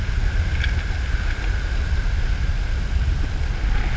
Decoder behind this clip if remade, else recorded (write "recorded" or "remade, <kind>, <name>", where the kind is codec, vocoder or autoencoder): recorded